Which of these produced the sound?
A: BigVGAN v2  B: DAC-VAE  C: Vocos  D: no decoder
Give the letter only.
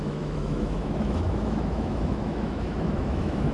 B